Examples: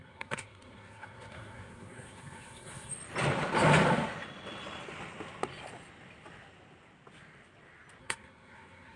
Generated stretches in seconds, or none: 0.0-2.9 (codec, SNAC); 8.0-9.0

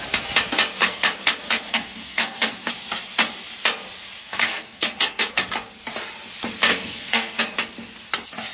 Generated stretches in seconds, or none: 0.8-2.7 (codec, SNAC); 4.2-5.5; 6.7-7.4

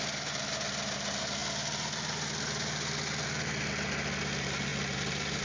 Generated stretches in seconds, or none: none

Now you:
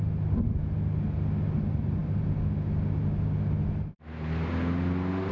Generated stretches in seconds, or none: none